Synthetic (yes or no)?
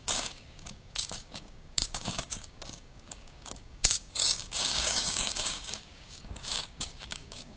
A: yes